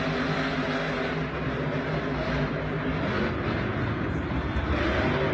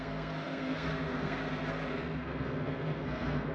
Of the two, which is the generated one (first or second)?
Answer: second